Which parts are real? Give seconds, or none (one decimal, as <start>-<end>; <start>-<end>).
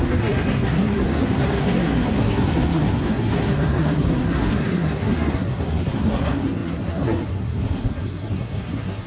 none